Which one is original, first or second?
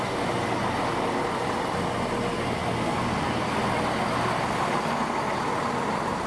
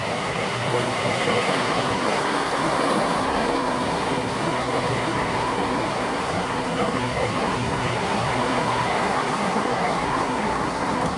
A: first